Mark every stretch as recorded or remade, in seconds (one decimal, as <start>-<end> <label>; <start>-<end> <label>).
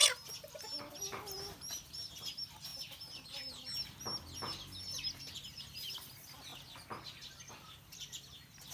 0.0-8.7 recorded